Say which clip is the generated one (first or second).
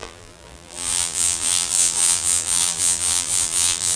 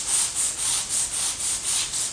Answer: first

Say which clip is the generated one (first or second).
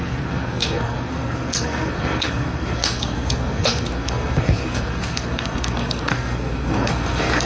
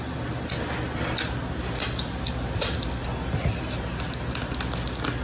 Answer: first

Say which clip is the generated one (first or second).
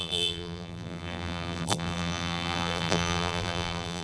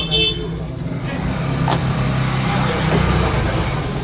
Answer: first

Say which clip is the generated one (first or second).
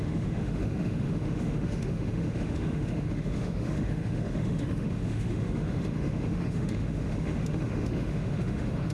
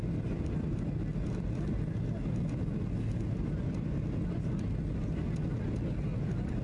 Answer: first